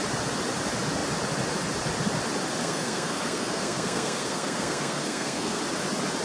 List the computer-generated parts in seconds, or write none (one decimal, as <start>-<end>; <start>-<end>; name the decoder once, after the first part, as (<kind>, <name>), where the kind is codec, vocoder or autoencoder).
2.6-5.6 (codec, SNAC)